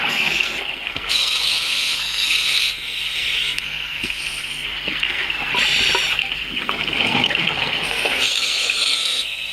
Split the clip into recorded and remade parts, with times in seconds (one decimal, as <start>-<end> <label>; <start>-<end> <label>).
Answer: 0.0-5.5 remade; 5.5-6.1 recorded; 6.1-9.5 remade